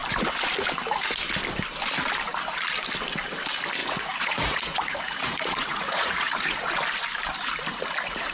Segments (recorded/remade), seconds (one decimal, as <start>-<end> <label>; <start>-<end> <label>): 0.0-3.8 recorded; 3.8-6.6 remade; 6.6-8.3 recorded